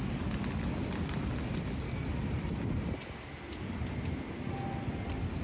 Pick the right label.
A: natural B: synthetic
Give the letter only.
A